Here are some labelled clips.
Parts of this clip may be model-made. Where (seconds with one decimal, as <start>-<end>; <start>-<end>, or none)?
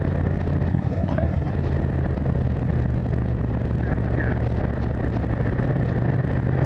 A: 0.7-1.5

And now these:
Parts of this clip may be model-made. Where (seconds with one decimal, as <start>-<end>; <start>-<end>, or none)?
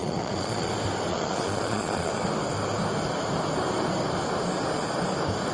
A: 0.0-0.7; 1.1-2.1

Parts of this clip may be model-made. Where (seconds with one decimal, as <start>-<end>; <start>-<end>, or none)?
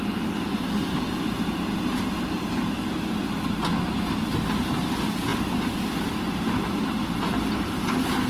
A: none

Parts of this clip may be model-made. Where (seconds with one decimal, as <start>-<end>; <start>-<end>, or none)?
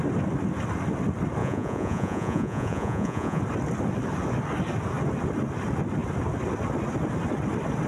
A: 1.4-3.4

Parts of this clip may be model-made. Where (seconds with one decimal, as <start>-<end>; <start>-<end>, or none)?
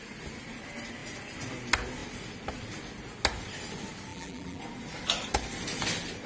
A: 4.1-4.6